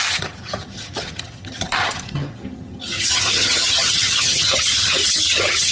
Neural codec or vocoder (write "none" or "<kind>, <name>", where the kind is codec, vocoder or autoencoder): vocoder, HiFi-GAN